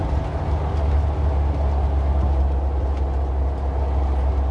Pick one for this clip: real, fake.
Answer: real